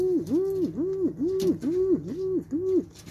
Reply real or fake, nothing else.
real